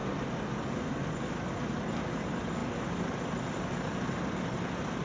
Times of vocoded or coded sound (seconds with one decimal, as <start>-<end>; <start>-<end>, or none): none